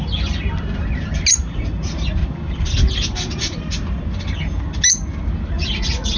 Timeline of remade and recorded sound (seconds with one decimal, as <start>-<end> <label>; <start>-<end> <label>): 0.0-1.3 recorded; 1.3-2.2 remade; 2.2-5.7 recorded; 5.7-6.2 remade